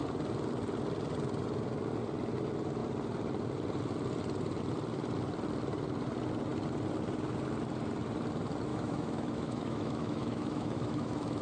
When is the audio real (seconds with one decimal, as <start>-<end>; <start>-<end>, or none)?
0.0-8.7